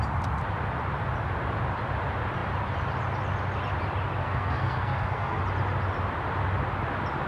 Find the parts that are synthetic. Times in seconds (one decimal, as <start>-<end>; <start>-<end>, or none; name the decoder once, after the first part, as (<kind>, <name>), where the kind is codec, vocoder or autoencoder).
4.2-5.4 (codec, SNAC)